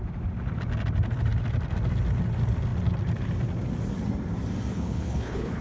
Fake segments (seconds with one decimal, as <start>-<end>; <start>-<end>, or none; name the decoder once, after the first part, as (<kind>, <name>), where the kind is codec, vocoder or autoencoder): 4.7-5.6 (codec, HILCodec)